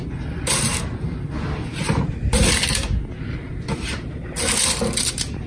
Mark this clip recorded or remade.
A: recorded